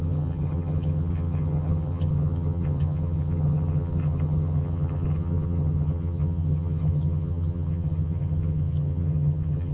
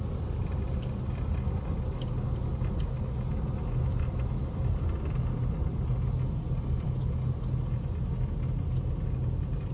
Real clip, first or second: second